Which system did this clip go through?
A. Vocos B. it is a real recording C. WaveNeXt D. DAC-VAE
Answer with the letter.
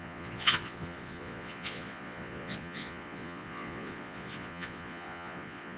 A